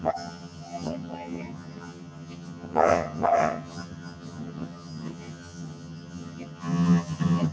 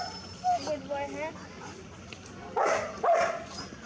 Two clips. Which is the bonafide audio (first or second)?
second